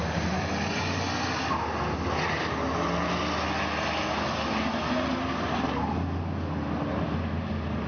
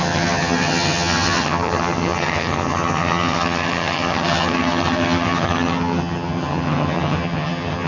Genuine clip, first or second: first